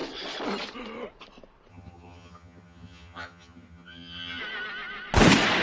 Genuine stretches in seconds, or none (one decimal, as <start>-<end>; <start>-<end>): 0.0-1.7; 4.4-5.6